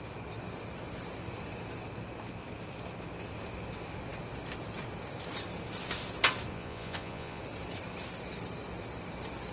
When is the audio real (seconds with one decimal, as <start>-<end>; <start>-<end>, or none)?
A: 0.0-6.5; 7.4-9.5